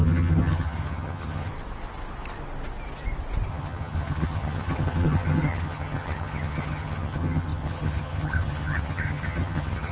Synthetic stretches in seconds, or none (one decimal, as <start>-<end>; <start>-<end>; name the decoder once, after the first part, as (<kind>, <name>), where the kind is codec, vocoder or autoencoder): 0.0-1.5 (vocoder, HiFi-GAN); 3.5-9.9